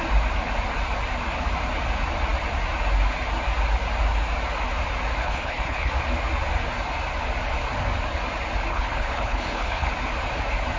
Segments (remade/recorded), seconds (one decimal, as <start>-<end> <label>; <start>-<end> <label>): 0.0-5.2 recorded; 5.2-5.9 remade; 5.9-8.7 recorded; 8.7-9.9 remade; 9.9-10.8 recorded